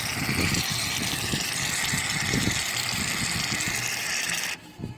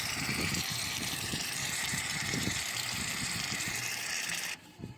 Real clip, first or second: first